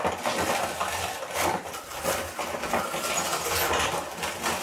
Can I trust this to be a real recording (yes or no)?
yes